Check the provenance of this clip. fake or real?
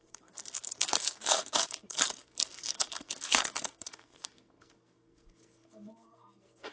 fake